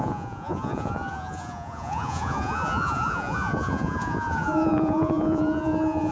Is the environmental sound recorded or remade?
remade